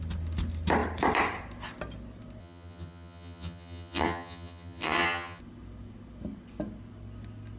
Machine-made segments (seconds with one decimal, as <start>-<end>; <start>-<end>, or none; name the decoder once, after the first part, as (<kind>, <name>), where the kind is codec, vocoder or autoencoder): 2.4-5.4 (vocoder, HiFi-GAN)